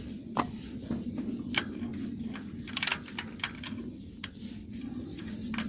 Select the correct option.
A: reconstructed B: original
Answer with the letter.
B